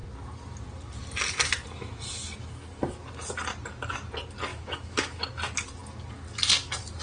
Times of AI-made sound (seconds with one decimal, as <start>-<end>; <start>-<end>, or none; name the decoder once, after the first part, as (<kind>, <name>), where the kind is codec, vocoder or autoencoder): 4.5-5.2 (autoencoder, DAC-VAE)